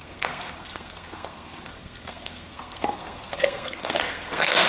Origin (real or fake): fake